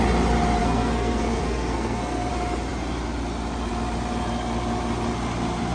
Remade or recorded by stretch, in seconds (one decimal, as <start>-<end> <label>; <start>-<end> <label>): 0.0-0.6 recorded; 0.6-2.3 remade; 2.3-5.7 recorded